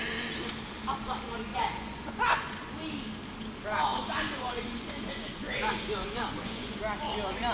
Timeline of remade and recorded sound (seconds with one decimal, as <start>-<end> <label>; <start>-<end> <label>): 0.0-1.5 recorded; 1.5-2.7 remade; 2.7-3.9 recorded; 3.9-6.8 remade; 6.8-7.5 recorded

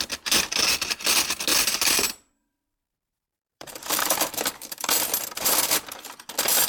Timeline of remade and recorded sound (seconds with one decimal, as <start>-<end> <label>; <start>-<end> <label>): 0.0-1.5 recorded; 1.5-5.0 remade; 5.0-6.7 recorded

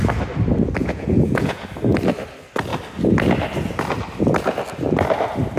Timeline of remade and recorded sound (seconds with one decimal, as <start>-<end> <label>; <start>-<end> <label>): 0.0-0.8 recorded; 0.8-1.7 remade; 1.7-5.6 recorded

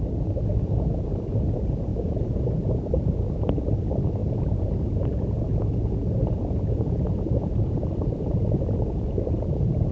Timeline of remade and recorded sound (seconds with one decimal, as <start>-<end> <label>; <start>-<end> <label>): 0.0-1.9 recorded; 1.9-2.4 remade; 2.4-4.2 recorded; 4.2-9.3 remade; 9.3-9.9 recorded

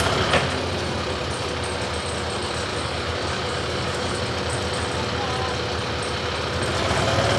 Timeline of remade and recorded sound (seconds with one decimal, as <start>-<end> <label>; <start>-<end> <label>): 0.0-2.7 recorded; 2.7-4.2 remade; 4.2-7.4 recorded

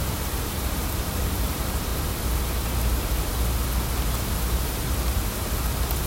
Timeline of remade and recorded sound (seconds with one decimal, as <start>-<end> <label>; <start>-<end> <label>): 0.0-1.2 remade; 1.2-6.1 recorded

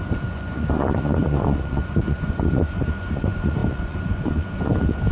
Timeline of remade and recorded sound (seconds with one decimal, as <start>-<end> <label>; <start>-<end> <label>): 0.0-5.1 remade